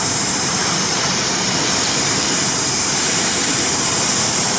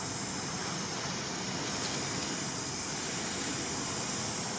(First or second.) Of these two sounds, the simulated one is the first